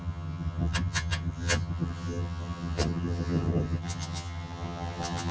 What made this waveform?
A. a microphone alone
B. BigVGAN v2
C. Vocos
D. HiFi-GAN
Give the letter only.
D